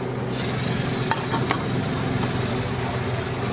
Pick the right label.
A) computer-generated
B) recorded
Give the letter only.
B